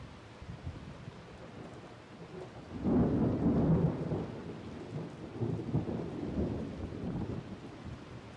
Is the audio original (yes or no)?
yes